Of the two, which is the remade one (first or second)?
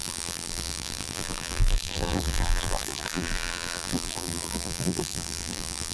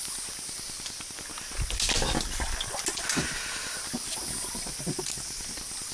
first